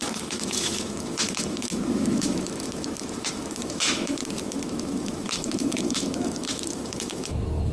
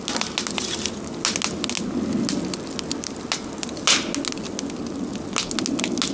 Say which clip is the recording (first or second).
second